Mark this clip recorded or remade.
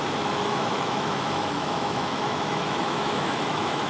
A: remade